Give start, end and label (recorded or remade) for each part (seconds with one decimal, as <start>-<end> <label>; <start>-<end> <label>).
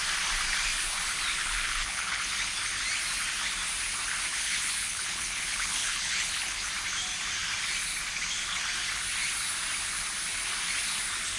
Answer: 0.0-1.4 recorded; 1.4-2.3 remade; 2.3-4.3 recorded; 4.3-6.7 remade; 6.7-11.4 recorded